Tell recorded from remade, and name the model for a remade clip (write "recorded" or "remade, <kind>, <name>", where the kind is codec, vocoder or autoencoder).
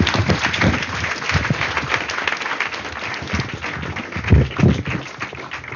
recorded